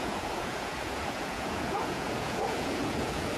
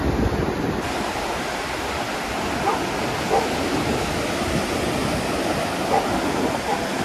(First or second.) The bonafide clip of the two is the second